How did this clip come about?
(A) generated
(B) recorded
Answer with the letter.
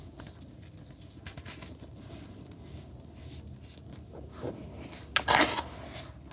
B